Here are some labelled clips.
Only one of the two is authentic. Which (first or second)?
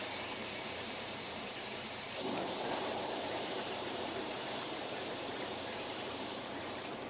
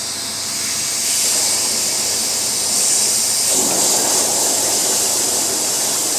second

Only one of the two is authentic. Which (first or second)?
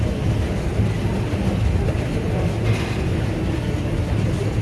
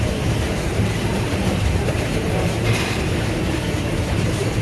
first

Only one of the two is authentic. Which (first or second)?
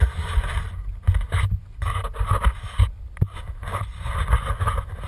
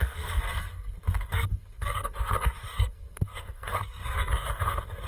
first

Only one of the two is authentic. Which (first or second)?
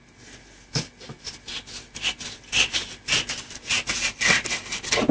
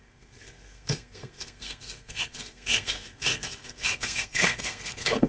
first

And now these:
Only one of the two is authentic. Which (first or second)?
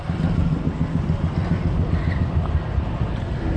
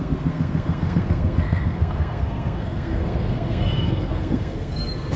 first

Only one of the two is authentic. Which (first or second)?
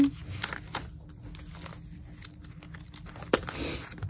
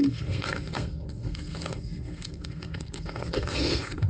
first